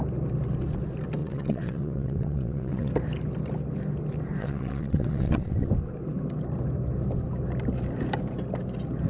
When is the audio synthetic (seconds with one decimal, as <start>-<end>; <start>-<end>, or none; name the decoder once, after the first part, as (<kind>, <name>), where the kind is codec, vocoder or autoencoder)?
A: 1.2-2.9 (vocoder, WaveNeXt); 4.4-5.7

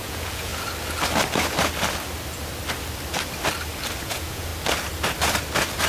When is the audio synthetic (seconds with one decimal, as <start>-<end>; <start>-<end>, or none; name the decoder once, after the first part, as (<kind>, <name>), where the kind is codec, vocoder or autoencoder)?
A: 0.0-0.5 (vocoder, Vocos); 4.0-4.5